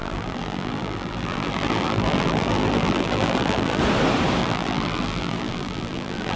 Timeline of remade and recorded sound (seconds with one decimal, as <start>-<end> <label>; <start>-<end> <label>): 0.0-3.8 remade; 3.8-4.4 recorded; 4.4-6.4 remade